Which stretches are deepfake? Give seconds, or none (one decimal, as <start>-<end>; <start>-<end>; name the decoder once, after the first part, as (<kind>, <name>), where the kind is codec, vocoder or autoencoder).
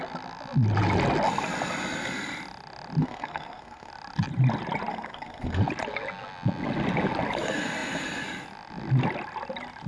3.0-3.9 (codec, SNAC); 4.9-5.6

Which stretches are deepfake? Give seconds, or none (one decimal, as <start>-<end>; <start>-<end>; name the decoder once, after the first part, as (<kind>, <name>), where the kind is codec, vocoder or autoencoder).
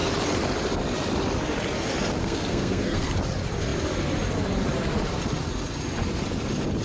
2.2-3.1 (codec, SNAC)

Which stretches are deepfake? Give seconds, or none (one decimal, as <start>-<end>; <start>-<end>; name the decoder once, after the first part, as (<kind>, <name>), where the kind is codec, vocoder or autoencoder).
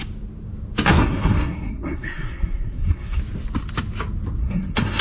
1.0-3.2 (codec, SNAC); 4.4-5.0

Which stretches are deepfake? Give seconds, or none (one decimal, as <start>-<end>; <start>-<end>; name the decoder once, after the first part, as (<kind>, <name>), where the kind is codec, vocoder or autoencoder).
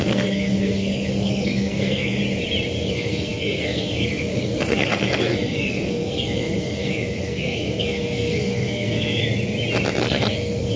0.0-2.2 (codec, SNAC); 2.9-9.2; 10.0-10.8